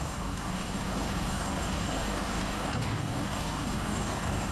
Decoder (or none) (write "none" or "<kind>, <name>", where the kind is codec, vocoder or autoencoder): codec, DAC